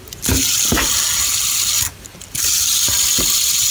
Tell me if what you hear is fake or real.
real